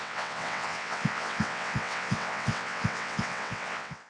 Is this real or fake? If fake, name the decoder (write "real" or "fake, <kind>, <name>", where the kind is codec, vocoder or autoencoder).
fake, vocoder, WaveNeXt